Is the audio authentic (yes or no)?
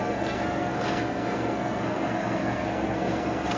no